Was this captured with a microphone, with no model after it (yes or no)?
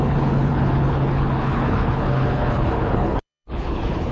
no